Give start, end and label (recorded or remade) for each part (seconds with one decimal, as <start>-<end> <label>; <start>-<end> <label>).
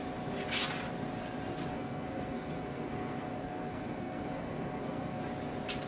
0.0-1.7 recorded; 1.7-5.2 remade; 5.2-5.9 recorded